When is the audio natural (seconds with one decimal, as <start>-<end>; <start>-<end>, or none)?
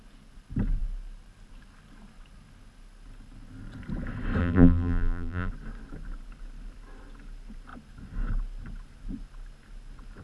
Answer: 0.0-4.4; 5.5-10.2